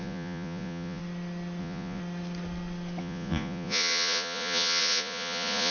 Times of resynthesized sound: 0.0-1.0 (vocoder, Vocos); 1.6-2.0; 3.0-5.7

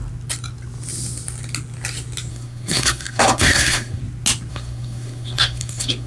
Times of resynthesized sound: 2.3-4.0 (codec, SNAC); 4.5-6.1

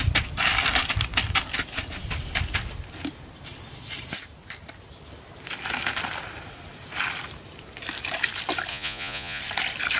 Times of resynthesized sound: 8.7-9.4 (vocoder, Vocos)

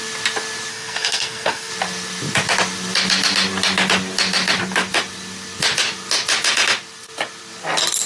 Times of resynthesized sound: 0.7-1.7 (codec, SNAC)

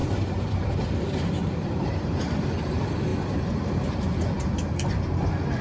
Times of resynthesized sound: 0.0-2.7 (vocoder, BigVGAN v2); 3.1-3.8

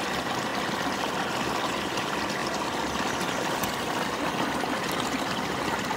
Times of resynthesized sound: none

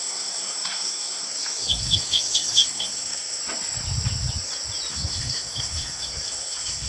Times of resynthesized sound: 0.0-3.4 (codec, SNAC); 4.9-6.9

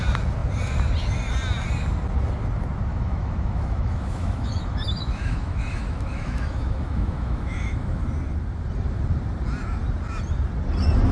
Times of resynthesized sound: 2.9-8.0 (autoencoder, DAC-VAE)